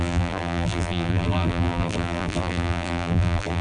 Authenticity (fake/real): fake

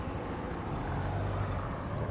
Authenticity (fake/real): real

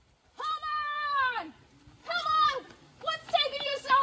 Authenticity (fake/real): fake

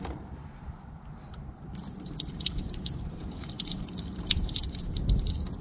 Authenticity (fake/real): fake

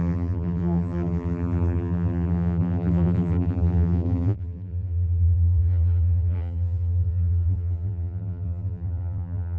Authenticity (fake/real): fake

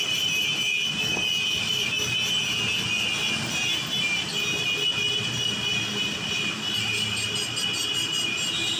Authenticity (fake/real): real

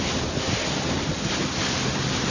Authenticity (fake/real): real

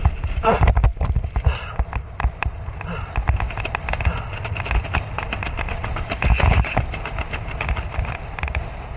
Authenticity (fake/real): real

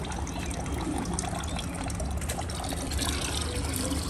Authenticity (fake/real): real